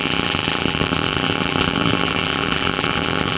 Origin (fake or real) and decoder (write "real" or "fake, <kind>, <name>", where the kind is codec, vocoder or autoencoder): fake, vocoder, BigVGAN v2